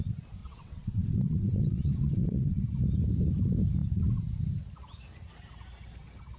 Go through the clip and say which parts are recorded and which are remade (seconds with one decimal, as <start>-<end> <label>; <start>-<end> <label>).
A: 0.0-0.4 recorded; 0.4-2.8 remade; 2.8-6.4 recorded